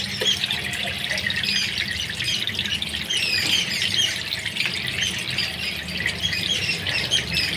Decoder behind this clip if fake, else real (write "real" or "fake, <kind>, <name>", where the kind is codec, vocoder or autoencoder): real